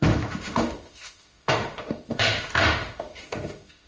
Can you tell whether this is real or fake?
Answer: fake